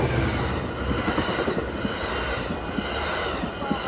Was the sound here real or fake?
real